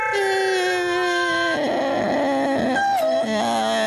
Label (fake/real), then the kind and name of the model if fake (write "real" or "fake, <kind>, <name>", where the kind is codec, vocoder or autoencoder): real